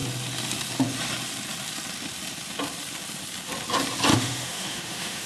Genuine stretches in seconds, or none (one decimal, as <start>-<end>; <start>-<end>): 0.0-4.1